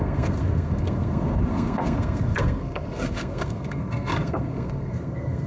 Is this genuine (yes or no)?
no